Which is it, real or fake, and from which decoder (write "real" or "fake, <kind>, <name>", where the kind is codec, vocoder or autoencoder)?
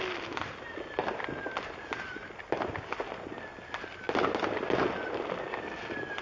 real